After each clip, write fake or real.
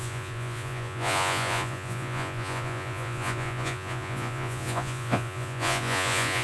fake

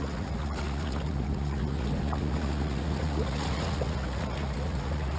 fake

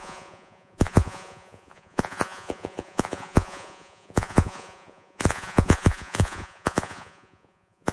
fake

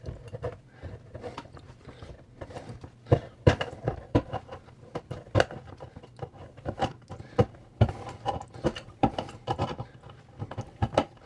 real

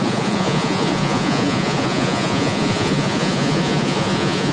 fake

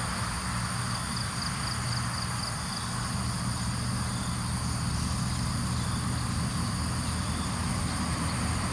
real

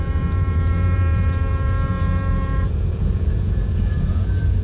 fake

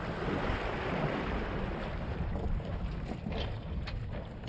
real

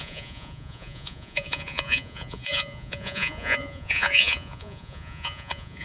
fake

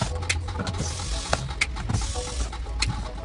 real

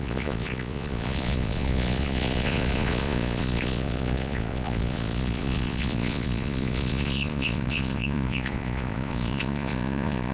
fake